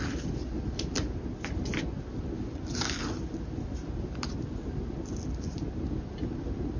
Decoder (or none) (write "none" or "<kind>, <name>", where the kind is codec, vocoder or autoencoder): none